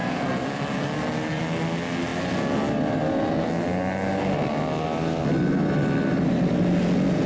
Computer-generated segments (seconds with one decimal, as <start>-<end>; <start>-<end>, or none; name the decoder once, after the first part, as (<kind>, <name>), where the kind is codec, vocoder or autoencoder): 0.0-0.6 (vocoder, BigVGAN v2)